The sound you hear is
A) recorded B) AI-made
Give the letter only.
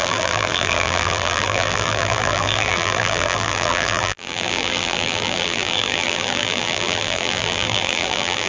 B